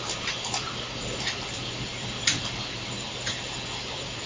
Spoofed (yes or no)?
yes